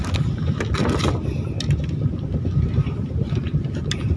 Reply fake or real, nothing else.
real